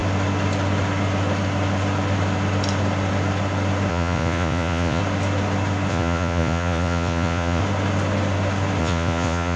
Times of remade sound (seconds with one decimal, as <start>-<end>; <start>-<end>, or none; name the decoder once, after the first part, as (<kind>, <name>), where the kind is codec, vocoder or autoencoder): 3.9-5.0 (vocoder, Vocos); 5.9-7.6; 8.8-9.6